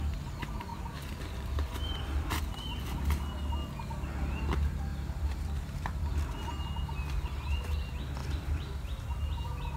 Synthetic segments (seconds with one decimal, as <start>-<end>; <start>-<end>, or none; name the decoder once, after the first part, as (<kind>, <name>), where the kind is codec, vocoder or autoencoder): 0.7-2.4 (vocoder, BigVGAN v2); 4.9-6.1; 8.2-9.1